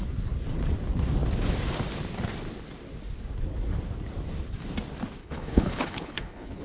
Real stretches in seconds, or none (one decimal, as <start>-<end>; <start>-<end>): 0.0-5.2